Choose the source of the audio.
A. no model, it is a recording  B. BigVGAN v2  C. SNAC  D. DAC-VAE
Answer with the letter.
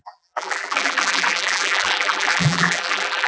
B